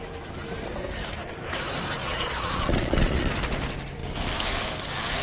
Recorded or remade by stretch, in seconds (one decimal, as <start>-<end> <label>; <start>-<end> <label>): 0.0-2.0 recorded; 2.0-3.3 remade; 3.3-5.2 recorded